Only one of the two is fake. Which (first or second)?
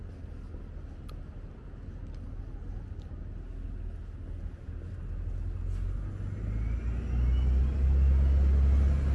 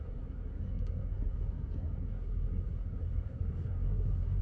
second